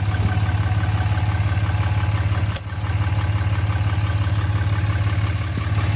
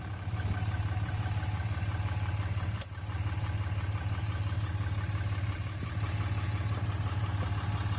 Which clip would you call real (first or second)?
first